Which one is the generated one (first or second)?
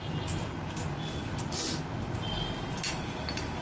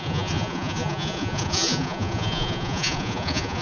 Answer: second